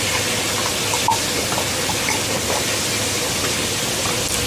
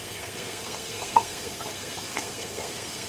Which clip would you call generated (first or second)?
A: second